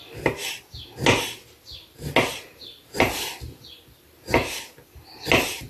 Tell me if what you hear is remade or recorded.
recorded